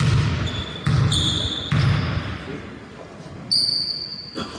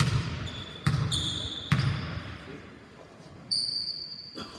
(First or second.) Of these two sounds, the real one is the first